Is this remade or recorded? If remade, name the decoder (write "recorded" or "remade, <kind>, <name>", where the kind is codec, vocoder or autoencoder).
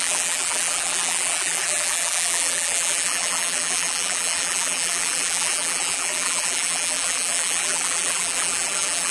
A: remade, vocoder, BigVGAN v2